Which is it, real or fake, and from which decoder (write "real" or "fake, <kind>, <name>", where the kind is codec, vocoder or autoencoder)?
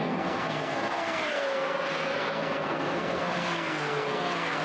fake, codec, SNAC